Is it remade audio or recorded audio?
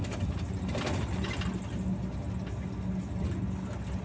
recorded